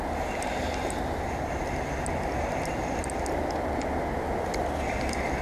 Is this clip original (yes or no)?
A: yes